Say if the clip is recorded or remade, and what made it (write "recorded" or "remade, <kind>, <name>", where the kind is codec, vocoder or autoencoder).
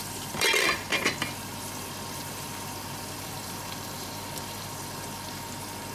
remade, vocoder, BigVGAN v2